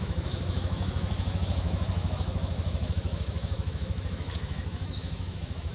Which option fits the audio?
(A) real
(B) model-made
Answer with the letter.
B